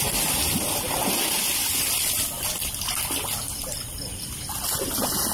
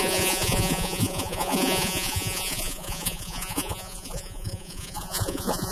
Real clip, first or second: first